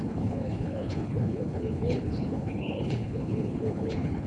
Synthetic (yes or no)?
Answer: yes